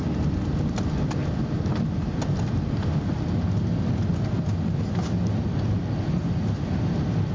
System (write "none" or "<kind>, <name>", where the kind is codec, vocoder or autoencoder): none